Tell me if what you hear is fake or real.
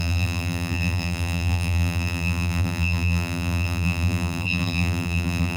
fake